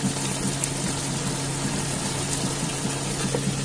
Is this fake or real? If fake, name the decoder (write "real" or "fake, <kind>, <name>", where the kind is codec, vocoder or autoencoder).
real